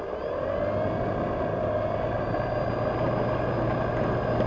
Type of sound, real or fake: real